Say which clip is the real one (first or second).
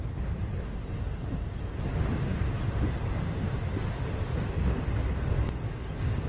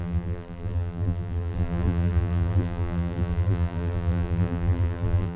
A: first